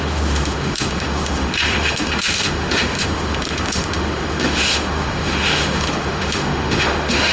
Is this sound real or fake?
fake